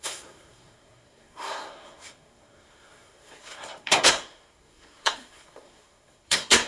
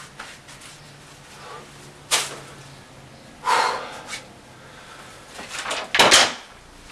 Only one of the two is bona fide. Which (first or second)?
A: second